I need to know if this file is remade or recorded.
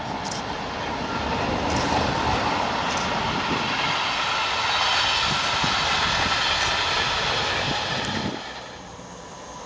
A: recorded